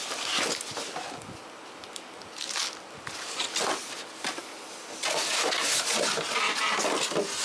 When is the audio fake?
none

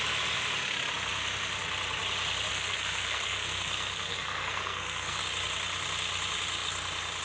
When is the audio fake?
2.5-5.2 (codec, SNAC)